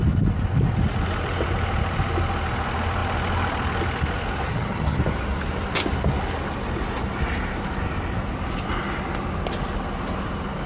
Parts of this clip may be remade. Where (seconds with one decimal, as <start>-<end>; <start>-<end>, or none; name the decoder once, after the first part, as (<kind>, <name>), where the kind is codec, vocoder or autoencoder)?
4.5-5.0 (vocoder, HiFi-GAN)